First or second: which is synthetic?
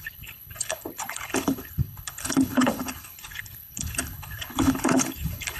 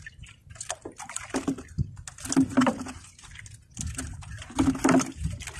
first